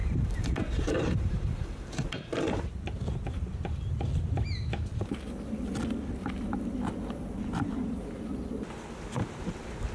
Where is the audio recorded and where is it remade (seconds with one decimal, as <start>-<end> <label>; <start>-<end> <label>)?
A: 0.0-2.5 remade; 2.5-9.9 recorded